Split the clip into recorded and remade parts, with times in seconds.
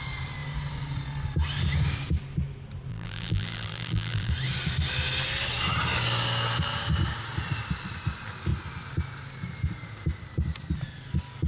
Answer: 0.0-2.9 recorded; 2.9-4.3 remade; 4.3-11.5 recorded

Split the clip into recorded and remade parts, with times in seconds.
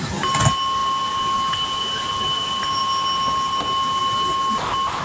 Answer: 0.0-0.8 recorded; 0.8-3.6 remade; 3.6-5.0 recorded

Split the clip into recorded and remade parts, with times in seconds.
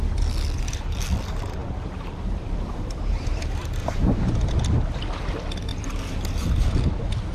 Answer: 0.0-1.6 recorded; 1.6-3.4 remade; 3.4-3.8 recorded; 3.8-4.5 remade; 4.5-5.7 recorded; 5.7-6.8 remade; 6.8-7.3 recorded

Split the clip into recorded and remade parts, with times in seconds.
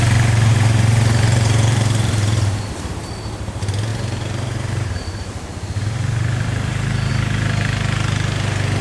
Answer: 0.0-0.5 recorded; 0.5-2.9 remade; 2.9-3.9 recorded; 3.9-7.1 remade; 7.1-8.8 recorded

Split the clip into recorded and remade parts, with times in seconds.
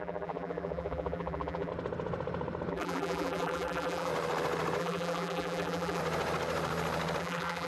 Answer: 0.0-1.7 remade; 1.7-2.7 recorded; 2.7-4.1 remade; 4.1-4.8 recorded; 4.8-6.0 remade; 6.0-7.2 recorded; 7.2-7.7 remade